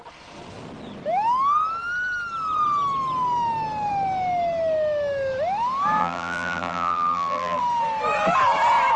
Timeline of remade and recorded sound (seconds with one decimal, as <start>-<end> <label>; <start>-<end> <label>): 0.0-6.0 recorded; 6.0-7.6 remade; 7.6-9.0 recorded